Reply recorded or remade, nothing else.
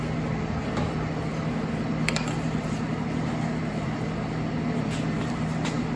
recorded